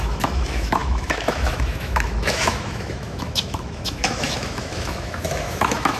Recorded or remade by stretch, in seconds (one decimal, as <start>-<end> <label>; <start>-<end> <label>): 0.0-6.0 remade